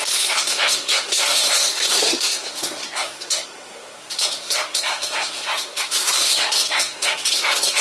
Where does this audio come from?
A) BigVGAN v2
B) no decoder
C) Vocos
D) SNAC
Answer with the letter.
D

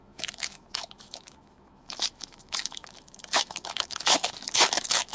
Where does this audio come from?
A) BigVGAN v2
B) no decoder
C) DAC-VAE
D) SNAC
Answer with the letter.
C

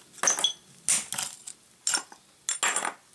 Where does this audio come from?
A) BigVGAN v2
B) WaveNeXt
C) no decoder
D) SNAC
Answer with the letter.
C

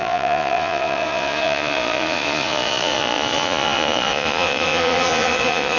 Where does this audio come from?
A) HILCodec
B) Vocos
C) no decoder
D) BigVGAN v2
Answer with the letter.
B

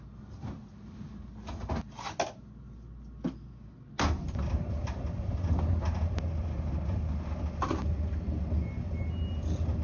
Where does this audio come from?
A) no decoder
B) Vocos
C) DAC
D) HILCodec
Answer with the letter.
A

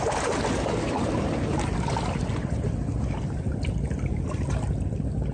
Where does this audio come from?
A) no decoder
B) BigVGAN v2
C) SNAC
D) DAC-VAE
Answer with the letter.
A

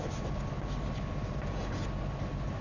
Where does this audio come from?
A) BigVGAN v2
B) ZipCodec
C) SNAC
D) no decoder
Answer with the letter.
D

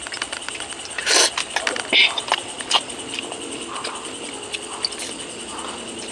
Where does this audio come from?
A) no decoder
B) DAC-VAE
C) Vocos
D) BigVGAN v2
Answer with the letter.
A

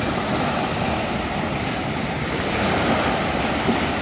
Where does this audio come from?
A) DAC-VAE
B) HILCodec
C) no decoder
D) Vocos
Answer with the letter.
C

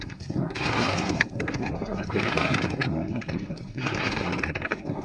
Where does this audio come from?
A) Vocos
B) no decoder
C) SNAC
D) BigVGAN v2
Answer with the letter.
C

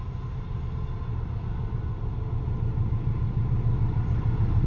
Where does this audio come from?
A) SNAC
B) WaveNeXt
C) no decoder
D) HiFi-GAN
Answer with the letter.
C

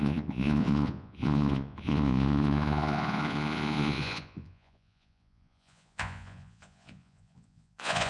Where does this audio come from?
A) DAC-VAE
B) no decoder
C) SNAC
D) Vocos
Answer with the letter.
D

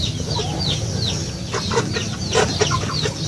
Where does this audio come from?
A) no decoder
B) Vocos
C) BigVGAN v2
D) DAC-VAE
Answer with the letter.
A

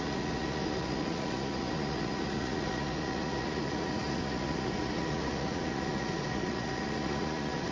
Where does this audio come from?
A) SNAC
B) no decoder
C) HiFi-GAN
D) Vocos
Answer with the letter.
D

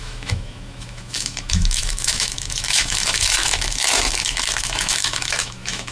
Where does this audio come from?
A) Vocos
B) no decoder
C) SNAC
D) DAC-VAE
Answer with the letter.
D